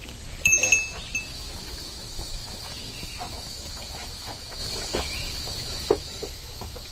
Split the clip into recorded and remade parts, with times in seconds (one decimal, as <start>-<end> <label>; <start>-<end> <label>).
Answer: 0.0-0.6 remade; 0.6-1.2 recorded; 1.2-6.9 remade